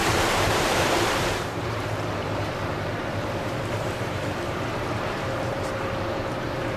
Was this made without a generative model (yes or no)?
no